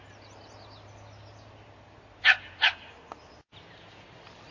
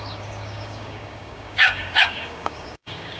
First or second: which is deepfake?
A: second